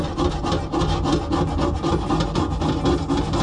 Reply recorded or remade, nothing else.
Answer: recorded